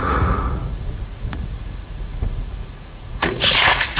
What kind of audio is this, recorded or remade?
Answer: remade